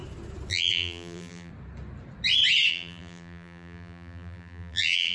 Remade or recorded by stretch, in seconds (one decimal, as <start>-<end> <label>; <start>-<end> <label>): 0.0-0.5 recorded; 0.5-1.5 remade; 1.5-2.7 recorded; 2.7-5.1 remade